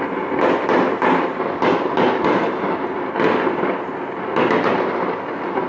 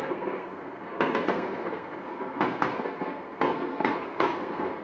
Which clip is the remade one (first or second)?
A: second